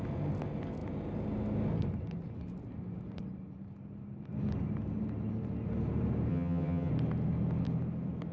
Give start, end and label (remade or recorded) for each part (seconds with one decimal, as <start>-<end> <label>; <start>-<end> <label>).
0.0-6.3 recorded; 6.3-6.9 remade; 6.9-8.3 recorded

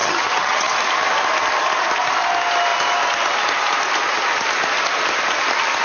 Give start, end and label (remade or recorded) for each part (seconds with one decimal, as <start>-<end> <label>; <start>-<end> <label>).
0.0-0.7 remade; 0.7-5.8 recorded

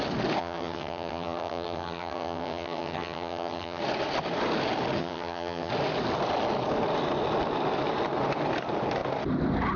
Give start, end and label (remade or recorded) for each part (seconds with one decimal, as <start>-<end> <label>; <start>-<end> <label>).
0.0-0.4 recorded; 0.4-3.8 remade; 3.8-5.0 recorded; 5.0-5.7 remade; 5.7-9.8 recorded

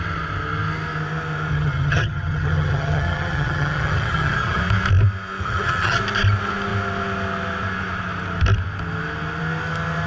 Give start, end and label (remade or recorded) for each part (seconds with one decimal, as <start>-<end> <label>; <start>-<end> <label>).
0.0-1.5 recorded; 1.5-4.6 remade; 4.6-5.4 recorded; 5.4-6.0 remade; 6.0-10.1 recorded

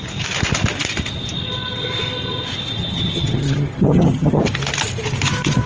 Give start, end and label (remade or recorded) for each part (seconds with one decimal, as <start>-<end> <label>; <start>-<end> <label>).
0.0-2.8 recorded; 2.8-4.4 remade; 4.4-5.7 recorded

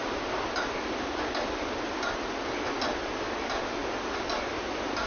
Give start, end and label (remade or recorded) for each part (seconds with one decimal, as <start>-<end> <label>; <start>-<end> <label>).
0.0-5.1 recorded

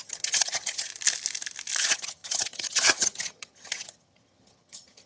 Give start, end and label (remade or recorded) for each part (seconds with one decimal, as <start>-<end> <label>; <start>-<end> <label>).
0.0-0.9 remade; 0.9-1.8 recorded; 1.8-5.1 remade